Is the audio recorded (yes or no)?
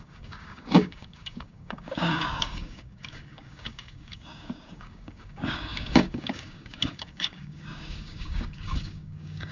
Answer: no